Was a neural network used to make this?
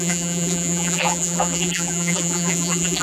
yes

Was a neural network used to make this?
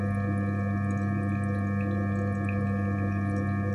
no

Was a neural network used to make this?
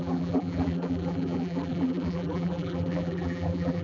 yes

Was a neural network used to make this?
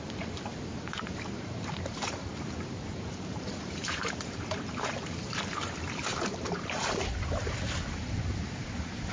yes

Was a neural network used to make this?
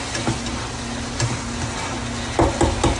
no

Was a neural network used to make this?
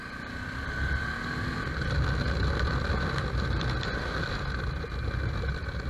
no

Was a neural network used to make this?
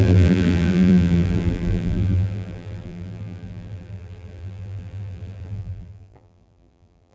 yes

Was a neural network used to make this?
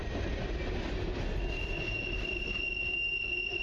yes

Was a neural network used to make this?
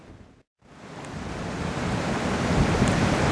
no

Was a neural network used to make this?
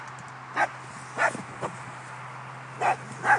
no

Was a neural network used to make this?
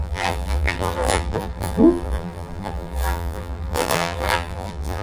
yes